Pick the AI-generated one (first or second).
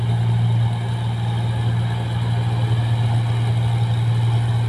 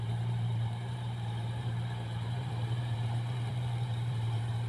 second